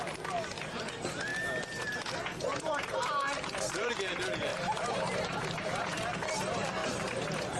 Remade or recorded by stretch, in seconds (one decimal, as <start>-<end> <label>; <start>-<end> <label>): 0.0-2.5 recorded; 2.5-3.9 remade; 3.9-4.5 recorded; 4.5-5.8 remade; 5.8-6.8 recorded; 6.8-7.6 remade